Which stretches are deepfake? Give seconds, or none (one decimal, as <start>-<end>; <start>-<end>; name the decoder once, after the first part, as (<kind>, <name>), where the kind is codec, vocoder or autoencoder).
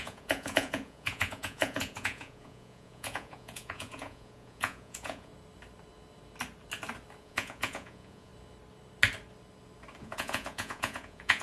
0.0-5.3 (vocoder, Vocos); 7.2-8.3; 10.0-11.4